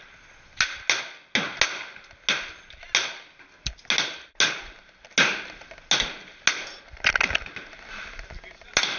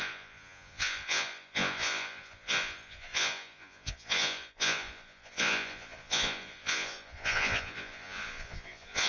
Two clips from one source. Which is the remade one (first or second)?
second